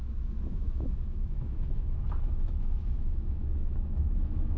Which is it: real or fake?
fake